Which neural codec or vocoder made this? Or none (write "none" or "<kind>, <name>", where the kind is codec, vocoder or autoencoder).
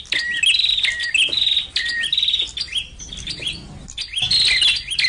none